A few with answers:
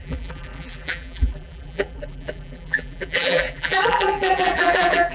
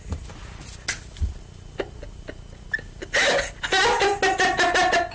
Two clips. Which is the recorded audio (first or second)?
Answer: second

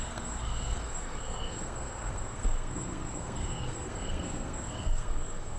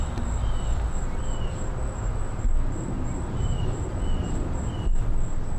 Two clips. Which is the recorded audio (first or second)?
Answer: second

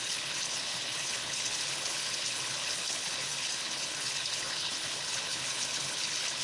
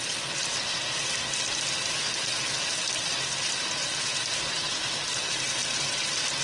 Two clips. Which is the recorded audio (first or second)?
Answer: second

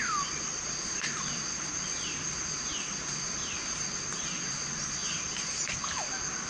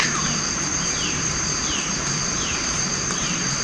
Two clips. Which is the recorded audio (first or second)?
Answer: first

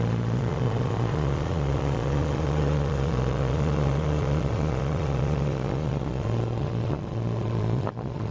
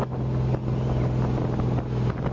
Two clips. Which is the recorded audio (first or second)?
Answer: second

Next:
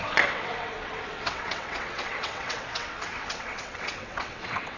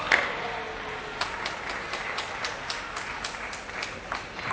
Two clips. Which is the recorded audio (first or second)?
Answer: second